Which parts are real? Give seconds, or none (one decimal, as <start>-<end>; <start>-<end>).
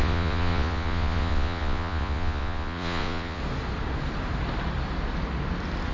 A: 3.4-5.9